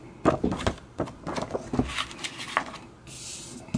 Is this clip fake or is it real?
real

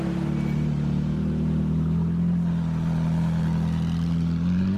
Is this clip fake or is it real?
real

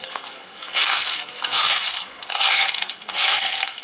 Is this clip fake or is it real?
fake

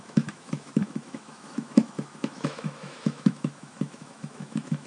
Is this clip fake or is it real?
fake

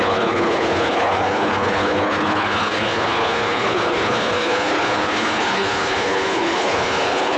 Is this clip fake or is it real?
fake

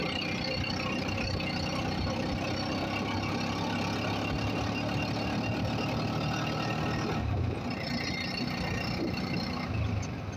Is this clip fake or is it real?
real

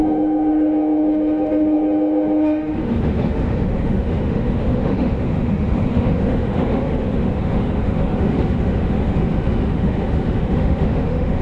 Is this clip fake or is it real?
fake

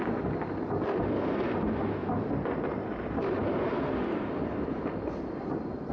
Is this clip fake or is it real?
real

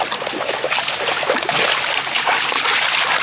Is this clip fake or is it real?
real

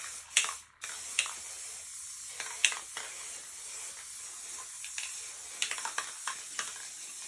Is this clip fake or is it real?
real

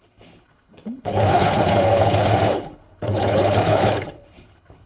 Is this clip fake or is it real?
fake